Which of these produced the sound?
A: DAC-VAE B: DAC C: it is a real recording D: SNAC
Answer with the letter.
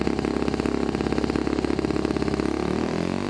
C